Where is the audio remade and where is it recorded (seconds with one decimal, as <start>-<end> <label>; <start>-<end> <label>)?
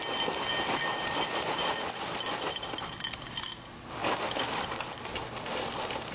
0.0-0.9 recorded; 0.9-2.4 remade; 2.4-4.0 recorded; 4.0-4.8 remade; 4.8-6.1 recorded